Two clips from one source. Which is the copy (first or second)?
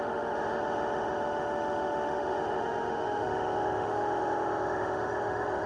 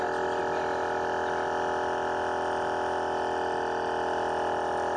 first